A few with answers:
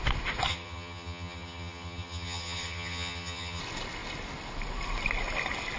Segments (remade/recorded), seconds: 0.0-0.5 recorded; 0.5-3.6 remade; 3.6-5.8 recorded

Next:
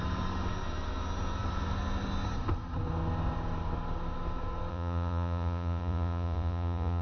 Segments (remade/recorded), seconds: 0.0-4.7 recorded; 4.7-7.0 remade

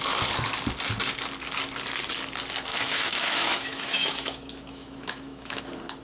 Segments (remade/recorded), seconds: 0.0-2.7 recorded; 2.7-5.6 remade; 5.6-6.0 recorded

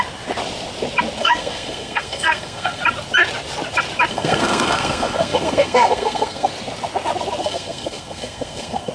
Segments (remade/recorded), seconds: 0.0-1.2 recorded; 1.2-2.8 remade; 2.8-4.1 recorded; 4.1-6.5 remade; 6.5-7.4 recorded; 7.4-8.9 remade

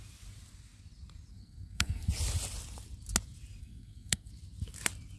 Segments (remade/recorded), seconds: 0.0-1.3 recorded; 1.3-2.1 remade; 2.1-3.6 recorded; 3.6-4.3 remade; 4.3-5.2 recorded

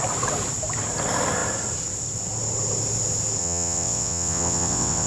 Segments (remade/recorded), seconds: 0.0-3.4 recorded; 3.4-5.1 remade